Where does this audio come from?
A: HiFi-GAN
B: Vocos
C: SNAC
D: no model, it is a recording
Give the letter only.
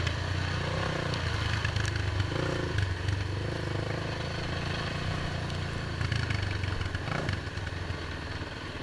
D